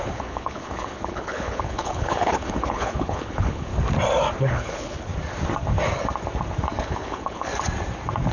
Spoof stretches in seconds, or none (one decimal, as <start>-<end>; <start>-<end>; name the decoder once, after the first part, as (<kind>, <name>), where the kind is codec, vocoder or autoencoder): 0.0-3.7 (codec, HILCodec); 4.4-5.1; 6.8-7.5